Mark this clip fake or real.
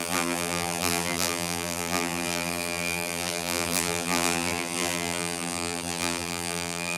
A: fake